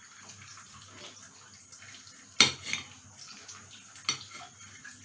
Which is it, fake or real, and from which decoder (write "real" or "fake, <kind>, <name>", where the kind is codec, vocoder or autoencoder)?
real